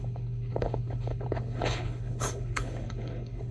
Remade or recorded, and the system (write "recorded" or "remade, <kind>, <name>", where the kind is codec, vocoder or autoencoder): remade, codec, HILCodec